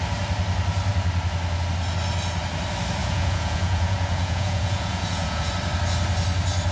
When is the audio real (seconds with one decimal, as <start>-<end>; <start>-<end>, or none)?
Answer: 0.0-3.0; 5.5-6.7